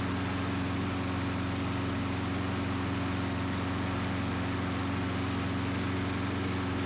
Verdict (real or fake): real